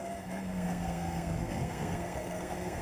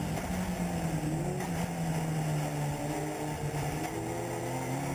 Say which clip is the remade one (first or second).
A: first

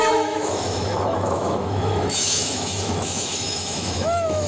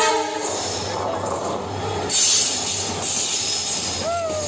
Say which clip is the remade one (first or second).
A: first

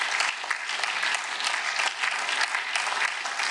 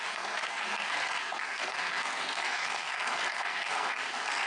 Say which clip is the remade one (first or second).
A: second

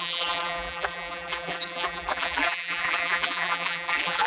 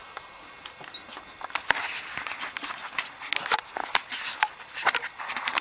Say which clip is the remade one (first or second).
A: first